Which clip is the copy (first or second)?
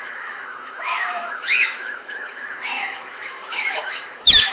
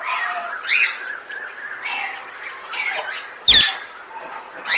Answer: first